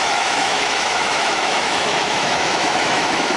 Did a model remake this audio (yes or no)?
yes